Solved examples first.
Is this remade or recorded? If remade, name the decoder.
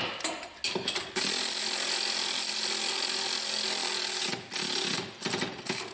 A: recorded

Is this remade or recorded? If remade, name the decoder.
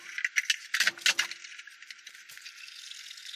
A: recorded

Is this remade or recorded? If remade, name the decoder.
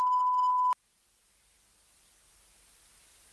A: recorded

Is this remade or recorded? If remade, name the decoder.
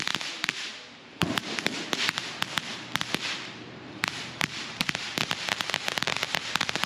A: remade, vocoder, BigVGAN v2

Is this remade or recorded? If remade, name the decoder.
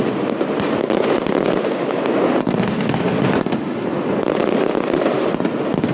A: recorded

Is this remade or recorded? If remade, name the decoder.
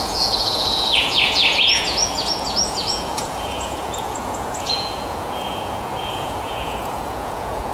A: remade, vocoder, Vocos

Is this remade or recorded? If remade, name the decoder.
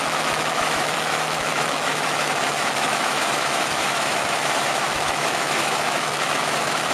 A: remade, autoencoder, DAC-VAE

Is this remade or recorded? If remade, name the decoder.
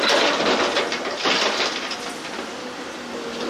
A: recorded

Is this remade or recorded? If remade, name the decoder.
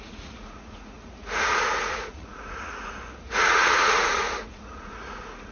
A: remade, vocoder, Vocos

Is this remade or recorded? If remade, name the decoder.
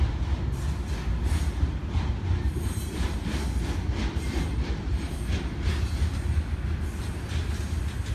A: recorded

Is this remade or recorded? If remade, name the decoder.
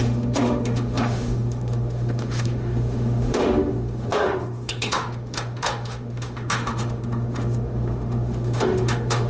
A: remade, autoencoder, DAC-VAE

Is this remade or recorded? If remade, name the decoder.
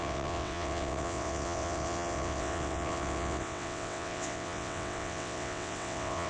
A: remade, vocoder, WaveNeXt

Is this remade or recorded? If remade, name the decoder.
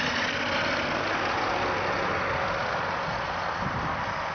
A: recorded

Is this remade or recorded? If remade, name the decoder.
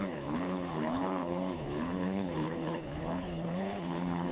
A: remade, codec, HILCodec